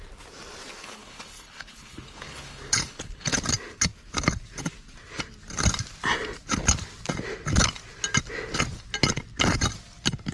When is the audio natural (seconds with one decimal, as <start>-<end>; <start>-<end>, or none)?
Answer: 0.0-0.8; 3.4-10.3